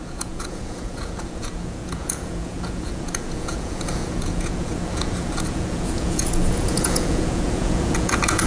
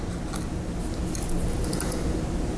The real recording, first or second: second